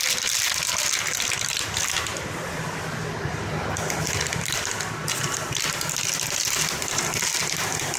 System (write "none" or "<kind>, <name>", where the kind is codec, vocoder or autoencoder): none